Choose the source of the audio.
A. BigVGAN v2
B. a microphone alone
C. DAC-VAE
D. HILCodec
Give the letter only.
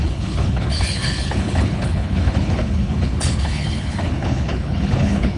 D